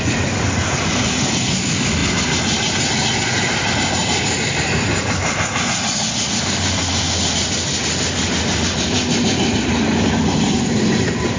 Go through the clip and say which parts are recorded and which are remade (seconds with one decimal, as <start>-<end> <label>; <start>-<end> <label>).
0.0-11.4 recorded